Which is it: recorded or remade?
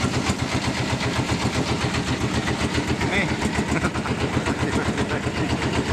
recorded